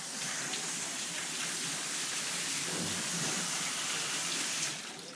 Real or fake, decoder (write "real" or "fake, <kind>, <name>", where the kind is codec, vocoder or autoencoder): real